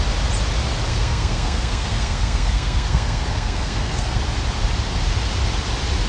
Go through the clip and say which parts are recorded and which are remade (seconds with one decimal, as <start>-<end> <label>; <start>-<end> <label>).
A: 0.0-0.9 recorded; 0.9-4.2 remade; 4.2-6.1 recorded